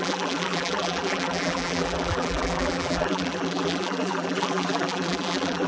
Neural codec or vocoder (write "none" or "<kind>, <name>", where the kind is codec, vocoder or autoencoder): vocoder, BigVGAN v2